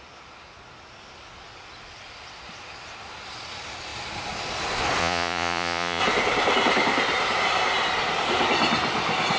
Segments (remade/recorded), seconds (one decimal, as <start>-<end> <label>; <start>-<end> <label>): 0.0-5.0 recorded; 5.0-6.0 remade; 6.0-9.4 recorded